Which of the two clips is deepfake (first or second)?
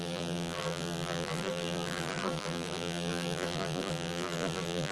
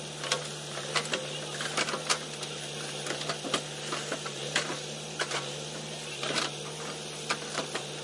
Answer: first